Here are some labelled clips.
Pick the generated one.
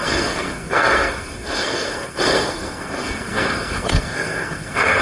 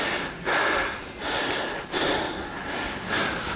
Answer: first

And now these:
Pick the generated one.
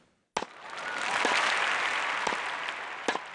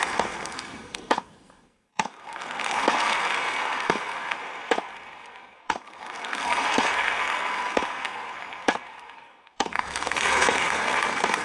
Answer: second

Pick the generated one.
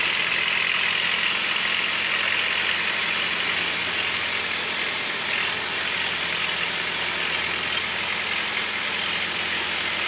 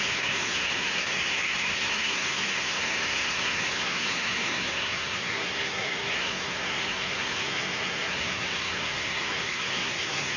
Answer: second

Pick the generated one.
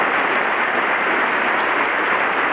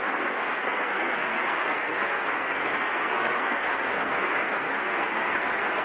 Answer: second